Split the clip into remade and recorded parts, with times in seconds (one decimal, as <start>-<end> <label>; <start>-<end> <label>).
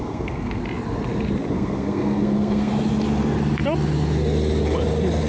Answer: 0.0-0.6 remade; 0.6-1.5 recorded; 1.5-2.7 remade; 2.7-5.3 recorded